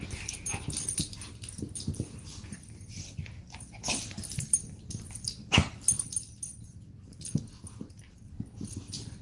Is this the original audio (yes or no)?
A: yes